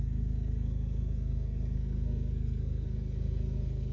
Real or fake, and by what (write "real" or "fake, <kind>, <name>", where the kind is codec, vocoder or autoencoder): fake, codec, SNAC